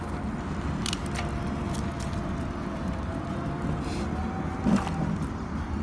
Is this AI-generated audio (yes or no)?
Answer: no